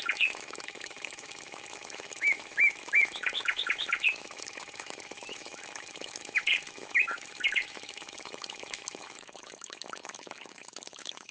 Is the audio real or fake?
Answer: fake